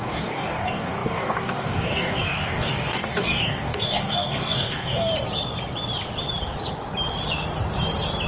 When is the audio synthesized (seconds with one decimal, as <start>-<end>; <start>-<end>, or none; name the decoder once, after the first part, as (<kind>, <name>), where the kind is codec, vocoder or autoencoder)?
0.0-5.1 (codec, DAC)